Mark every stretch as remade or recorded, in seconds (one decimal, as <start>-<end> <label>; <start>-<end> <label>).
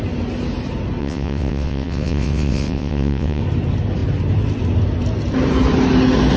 0.0-1.0 recorded; 1.0-3.4 remade; 3.4-6.4 recorded